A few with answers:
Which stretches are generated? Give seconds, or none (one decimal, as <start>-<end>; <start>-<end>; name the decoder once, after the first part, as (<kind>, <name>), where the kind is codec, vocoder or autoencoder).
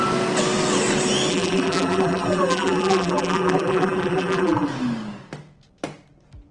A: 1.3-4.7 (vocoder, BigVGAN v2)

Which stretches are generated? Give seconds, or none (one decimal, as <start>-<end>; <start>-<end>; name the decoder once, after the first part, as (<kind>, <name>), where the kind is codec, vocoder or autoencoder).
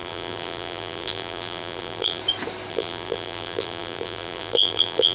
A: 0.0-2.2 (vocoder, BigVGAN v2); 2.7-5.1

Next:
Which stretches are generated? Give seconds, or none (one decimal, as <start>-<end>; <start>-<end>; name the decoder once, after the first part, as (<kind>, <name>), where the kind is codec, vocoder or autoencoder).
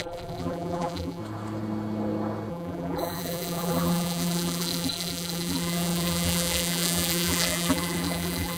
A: 0.0-1.2 (vocoder, BigVGAN v2); 2.5-8.6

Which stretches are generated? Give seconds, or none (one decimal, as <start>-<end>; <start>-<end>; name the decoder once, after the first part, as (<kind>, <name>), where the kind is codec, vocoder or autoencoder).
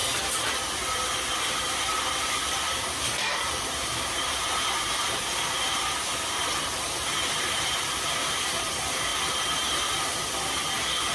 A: 1.5-9.1 (vocoder, BigVGAN v2)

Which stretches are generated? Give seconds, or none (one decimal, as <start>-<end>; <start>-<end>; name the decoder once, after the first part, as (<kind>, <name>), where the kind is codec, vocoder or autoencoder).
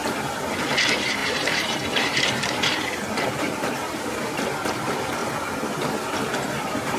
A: 0.6-5.2 (vocoder, BigVGAN v2); 6.3-7.0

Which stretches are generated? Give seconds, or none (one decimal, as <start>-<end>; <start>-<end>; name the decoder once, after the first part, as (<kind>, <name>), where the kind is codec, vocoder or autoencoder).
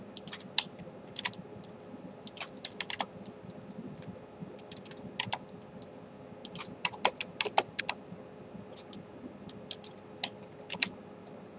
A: 6.4-7.8 (vocoder, BigVGAN v2)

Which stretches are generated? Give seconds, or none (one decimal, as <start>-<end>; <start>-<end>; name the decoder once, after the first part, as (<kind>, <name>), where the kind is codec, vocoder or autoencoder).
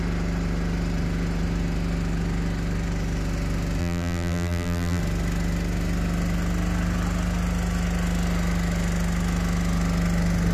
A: 3.8-5.0 (vocoder, BigVGAN v2)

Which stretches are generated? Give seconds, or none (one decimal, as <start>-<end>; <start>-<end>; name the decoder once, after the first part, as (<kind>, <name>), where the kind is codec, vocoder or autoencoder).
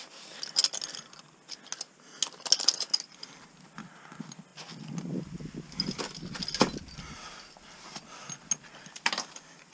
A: 0.0-0.6 (vocoder, BigVGAN v2); 3.3-4.5; 8.8-9.7